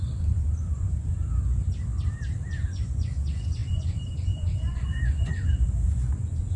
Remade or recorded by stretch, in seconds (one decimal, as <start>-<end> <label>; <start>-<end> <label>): 0.0-1.1 remade; 1.1-2.7 recorded; 2.7-6.6 remade